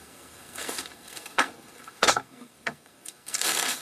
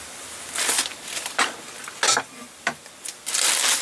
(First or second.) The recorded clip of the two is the second